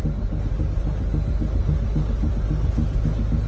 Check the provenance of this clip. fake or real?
real